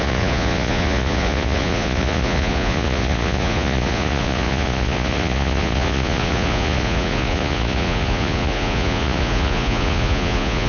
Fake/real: fake